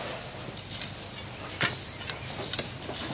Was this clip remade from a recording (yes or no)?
no